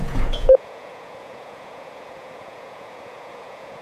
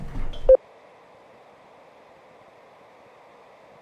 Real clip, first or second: second